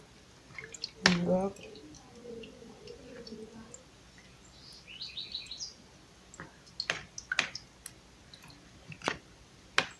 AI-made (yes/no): no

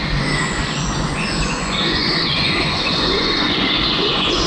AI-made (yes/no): yes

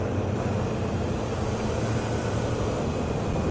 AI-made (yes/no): no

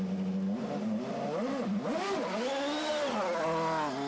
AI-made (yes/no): no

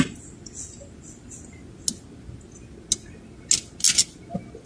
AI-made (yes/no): no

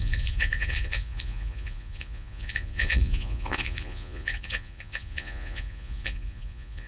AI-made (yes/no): yes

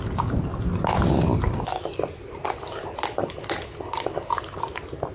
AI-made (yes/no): no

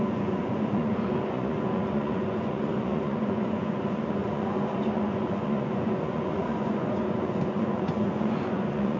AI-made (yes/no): yes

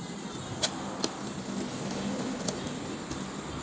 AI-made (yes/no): no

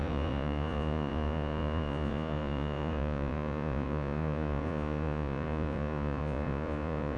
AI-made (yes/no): yes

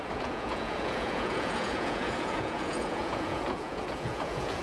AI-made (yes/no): yes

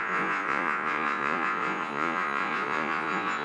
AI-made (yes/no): yes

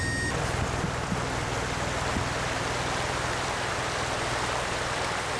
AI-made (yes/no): no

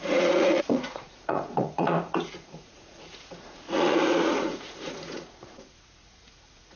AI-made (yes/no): yes